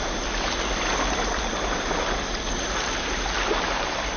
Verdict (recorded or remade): recorded